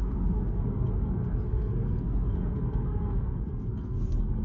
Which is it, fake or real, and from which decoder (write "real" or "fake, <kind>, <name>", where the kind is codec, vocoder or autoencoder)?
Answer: fake, codec, SNAC